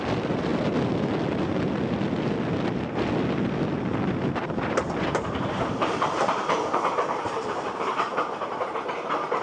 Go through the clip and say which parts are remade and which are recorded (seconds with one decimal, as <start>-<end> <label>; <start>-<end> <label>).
0.0-4.4 recorded; 4.4-8.9 remade; 8.9-9.4 recorded